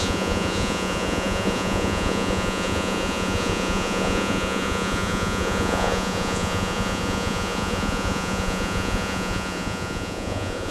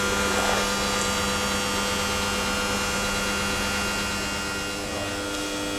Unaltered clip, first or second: second